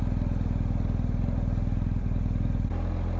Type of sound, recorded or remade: recorded